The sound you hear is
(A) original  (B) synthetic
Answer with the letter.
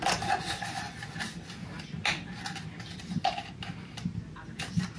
A